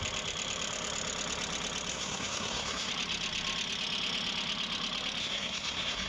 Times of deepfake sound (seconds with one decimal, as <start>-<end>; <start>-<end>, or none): 1.9-2.9; 5.2-6.1